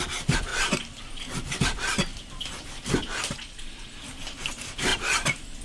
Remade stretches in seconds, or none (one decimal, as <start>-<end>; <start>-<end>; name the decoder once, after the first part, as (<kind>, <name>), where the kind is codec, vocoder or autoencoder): 2.1-2.6 (vocoder, BigVGAN v2); 4.9-5.6